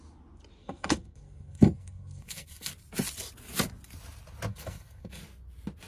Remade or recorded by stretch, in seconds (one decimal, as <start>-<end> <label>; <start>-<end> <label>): 0.0-0.6 recorded; 0.6-2.7 remade; 2.7-4.5 recorded; 4.5-5.2 remade; 5.2-5.9 recorded

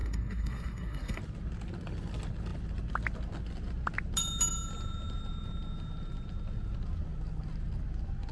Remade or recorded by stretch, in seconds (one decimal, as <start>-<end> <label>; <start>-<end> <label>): 0.0-1.2 remade; 1.2-8.3 recorded